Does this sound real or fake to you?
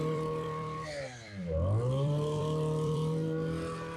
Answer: fake